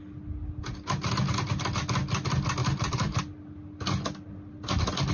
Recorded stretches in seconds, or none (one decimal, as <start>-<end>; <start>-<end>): 0.0-2.6; 3.2-5.1